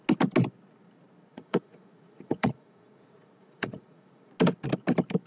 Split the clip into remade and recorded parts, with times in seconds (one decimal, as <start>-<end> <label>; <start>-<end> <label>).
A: 0.0-1.3 recorded; 1.3-4.3 remade; 4.3-5.3 recorded